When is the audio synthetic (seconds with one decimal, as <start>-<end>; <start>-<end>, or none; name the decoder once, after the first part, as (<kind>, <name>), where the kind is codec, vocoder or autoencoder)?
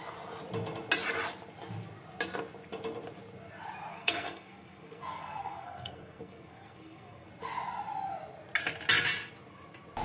3.9-7.3 (codec, SNAC)